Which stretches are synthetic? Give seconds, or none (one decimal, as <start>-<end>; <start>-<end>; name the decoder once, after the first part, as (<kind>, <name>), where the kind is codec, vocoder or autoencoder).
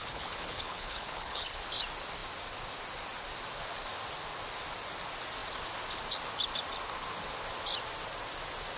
0.0-1.6 (codec, HILCodec)